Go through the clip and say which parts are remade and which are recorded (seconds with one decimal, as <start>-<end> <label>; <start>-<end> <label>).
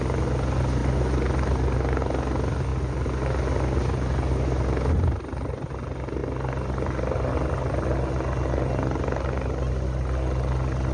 0.0-10.9 recorded